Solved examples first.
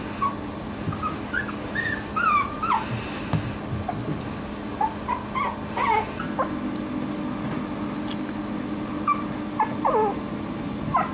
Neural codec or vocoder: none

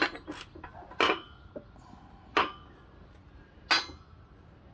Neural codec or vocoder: none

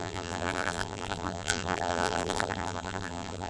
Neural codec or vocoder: vocoder, BigVGAN v2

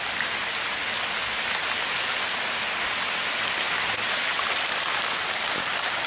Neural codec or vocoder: none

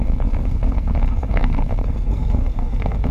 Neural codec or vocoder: codec, SNAC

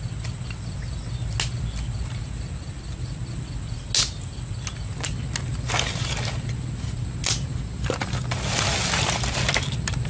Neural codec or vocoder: none